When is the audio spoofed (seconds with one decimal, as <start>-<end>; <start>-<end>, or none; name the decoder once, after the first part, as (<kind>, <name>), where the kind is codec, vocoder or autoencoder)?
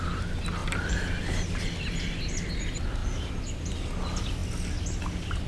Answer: none